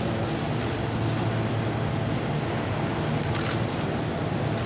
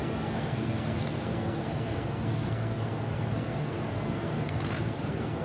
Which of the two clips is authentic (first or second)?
first